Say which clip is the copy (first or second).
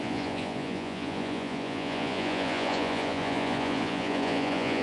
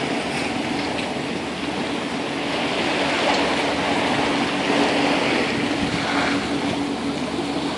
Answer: first